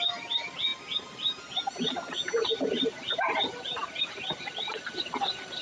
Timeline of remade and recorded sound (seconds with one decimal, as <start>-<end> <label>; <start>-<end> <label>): 0.0-5.6 recorded